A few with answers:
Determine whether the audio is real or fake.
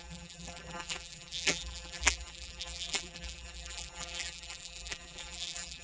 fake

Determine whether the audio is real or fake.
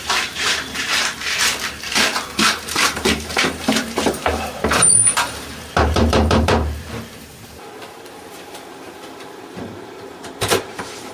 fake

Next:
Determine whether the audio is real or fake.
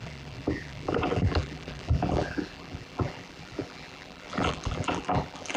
fake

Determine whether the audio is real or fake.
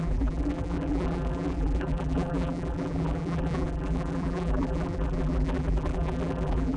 fake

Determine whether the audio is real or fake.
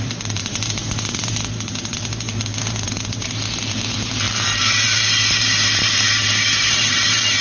fake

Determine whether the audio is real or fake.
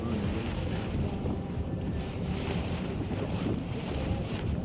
fake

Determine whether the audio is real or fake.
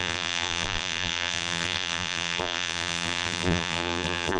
fake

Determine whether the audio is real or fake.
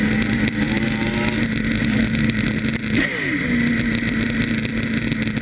real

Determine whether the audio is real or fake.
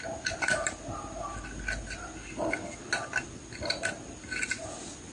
real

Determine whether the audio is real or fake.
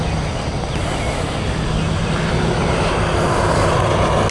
real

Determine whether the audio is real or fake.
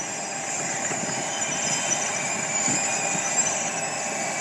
real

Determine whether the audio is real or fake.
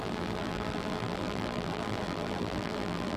fake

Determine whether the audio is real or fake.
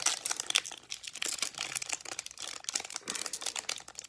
real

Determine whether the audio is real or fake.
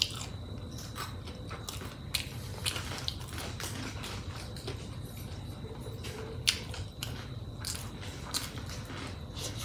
real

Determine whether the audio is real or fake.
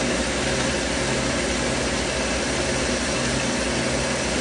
real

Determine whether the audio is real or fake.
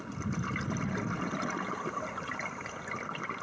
real